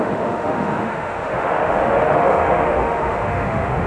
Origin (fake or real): fake